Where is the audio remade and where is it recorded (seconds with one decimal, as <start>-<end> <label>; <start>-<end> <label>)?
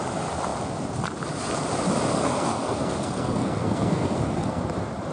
0.0-2.1 recorded; 2.1-4.6 remade; 4.6-5.1 recorded